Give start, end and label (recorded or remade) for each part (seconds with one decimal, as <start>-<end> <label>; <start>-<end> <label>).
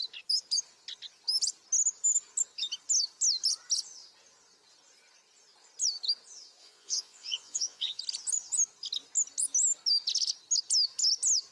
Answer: 0.0-6.6 recorded; 6.6-8.0 remade; 8.0-11.5 recorded